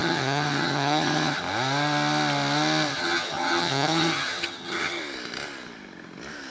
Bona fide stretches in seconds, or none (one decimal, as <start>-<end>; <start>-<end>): 1.4-2.9; 5.0-6.5